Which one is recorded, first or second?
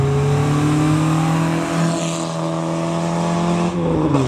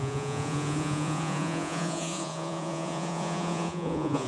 first